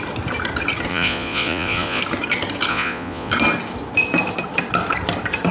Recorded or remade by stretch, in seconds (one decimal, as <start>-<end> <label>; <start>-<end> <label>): 0.0-0.9 recorded; 0.9-2.0 remade; 2.0-2.7 recorded; 2.7-3.3 remade; 3.3-5.5 recorded